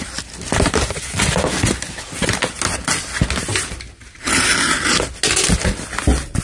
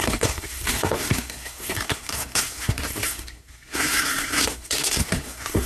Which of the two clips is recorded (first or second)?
first